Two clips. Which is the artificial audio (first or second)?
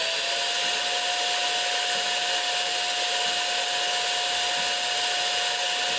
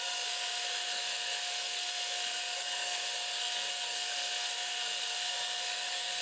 second